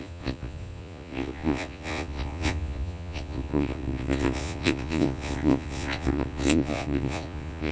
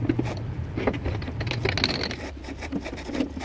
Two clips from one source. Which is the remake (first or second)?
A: first